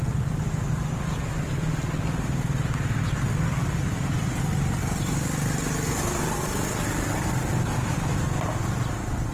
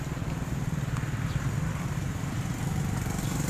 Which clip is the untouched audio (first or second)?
first